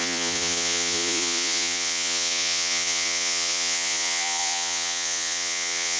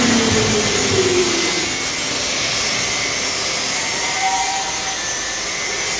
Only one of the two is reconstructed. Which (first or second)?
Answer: first